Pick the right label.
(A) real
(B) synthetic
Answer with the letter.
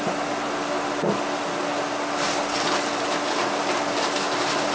A